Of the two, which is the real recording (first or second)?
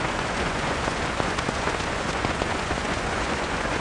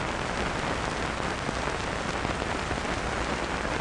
second